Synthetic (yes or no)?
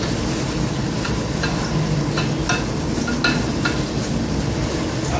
no